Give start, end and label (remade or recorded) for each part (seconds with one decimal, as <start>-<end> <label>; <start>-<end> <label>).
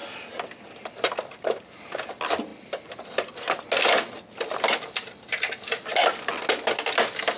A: 0.0-7.4 recorded